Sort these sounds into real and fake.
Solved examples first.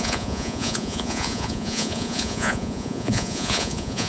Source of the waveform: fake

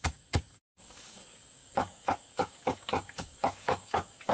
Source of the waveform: fake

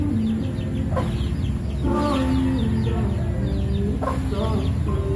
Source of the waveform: real